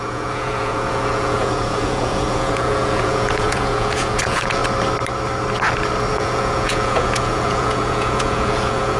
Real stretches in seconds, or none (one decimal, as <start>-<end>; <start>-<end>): 4.6-6.1